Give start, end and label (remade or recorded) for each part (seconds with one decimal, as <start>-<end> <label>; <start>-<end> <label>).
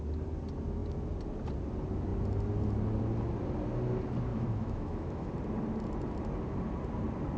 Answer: 0.0-4.3 recorded; 4.3-5.3 remade; 5.3-7.4 recorded